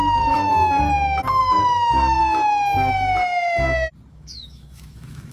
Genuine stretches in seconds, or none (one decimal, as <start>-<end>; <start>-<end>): 0.5-1.4; 2.2-4.1